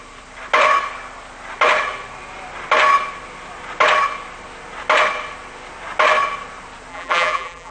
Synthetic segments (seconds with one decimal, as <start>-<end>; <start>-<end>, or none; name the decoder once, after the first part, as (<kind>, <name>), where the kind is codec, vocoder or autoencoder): 6.9-7.7 (vocoder, BigVGAN v2)